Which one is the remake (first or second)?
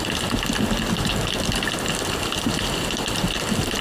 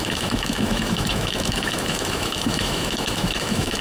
second